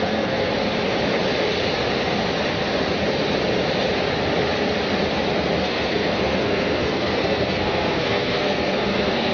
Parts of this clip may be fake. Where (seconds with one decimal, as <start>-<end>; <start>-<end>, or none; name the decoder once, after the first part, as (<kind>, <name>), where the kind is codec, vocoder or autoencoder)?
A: 0.0-0.5 (codec, SNAC); 5.6-9.3